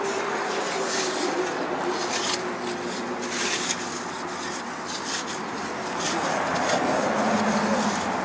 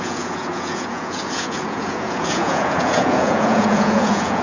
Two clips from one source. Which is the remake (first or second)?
second